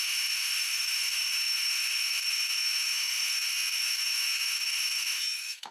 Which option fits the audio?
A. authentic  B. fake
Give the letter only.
B